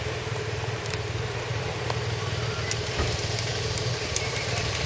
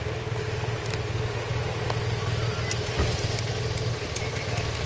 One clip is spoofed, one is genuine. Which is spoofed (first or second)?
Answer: first